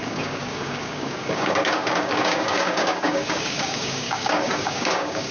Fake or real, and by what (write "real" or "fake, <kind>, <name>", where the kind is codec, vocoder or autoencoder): fake, codec, DAC